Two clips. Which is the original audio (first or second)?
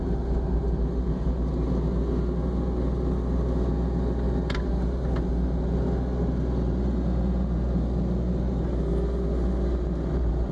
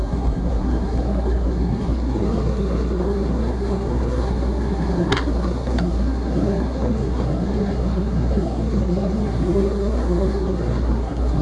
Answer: first